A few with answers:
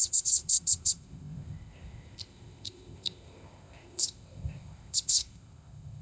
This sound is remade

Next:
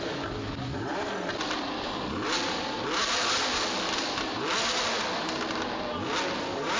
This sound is recorded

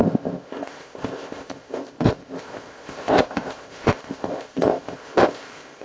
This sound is remade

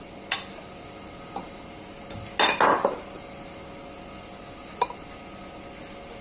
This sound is recorded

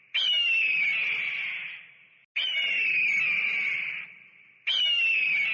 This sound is recorded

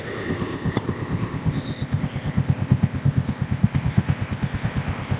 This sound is remade